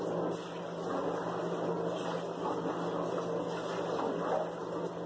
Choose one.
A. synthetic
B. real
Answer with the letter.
B